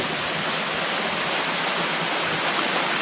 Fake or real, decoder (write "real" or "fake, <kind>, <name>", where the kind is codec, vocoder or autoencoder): real